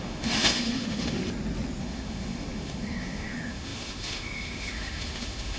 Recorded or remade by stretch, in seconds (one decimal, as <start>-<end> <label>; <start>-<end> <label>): 0.0-1.2 remade; 1.2-1.8 recorded; 1.8-5.6 remade